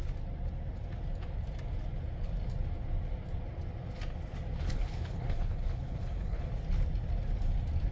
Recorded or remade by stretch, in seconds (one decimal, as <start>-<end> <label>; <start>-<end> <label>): 0.0-4.6 recorded; 4.6-6.5 remade; 6.5-7.9 recorded